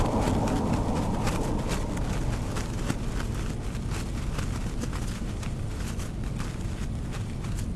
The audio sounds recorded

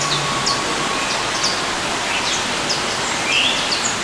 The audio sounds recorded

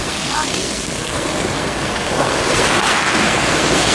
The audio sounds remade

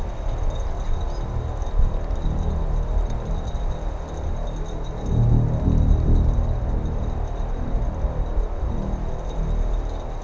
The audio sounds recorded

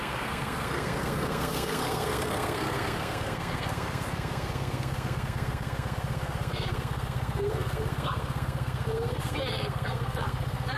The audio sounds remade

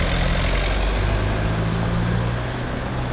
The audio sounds recorded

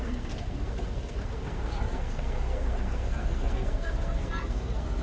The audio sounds remade